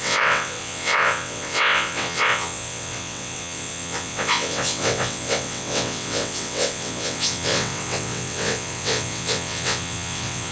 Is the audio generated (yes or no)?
yes